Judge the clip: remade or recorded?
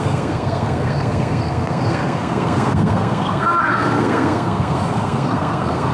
remade